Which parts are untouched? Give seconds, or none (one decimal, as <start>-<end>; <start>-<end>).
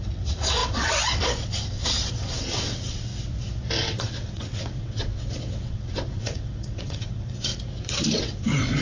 3.1-3.8; 7.5-8.0